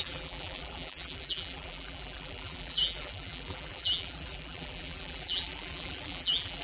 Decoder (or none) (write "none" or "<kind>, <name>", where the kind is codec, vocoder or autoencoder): vocoder, BigVGAN v2